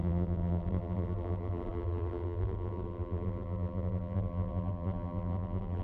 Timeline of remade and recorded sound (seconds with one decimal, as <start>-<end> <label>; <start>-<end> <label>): 0.0-5.8 remade